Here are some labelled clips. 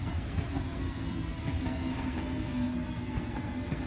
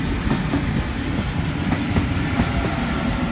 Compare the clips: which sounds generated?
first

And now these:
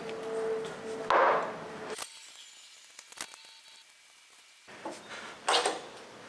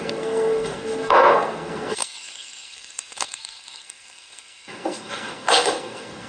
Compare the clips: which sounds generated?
second